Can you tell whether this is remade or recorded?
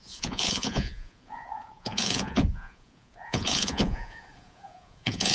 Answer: remade